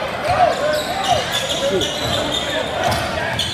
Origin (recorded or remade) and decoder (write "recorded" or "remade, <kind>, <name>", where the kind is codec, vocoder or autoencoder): recorded